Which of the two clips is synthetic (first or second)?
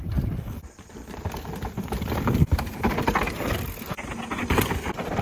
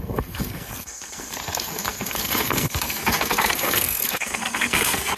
second